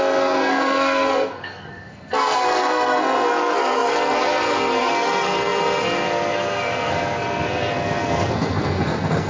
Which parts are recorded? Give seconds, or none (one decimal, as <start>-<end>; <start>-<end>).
none